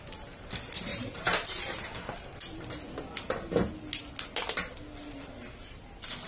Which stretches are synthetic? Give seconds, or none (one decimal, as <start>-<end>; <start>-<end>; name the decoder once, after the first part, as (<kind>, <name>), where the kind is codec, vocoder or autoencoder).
0.9-2.9 (vocoder, BigVGAN v2)